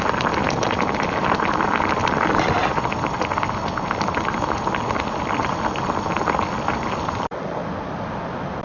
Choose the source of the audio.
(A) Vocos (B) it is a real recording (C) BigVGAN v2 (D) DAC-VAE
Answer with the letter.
B